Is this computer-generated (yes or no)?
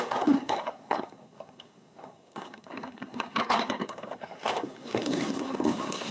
yes